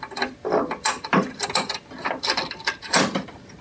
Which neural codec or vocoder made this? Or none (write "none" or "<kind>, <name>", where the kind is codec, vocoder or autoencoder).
none